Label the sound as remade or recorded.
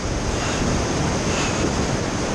recorded